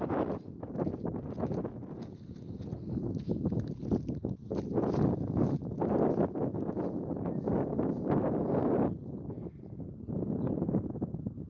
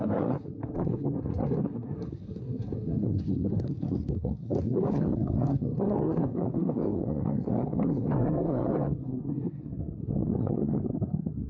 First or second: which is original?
first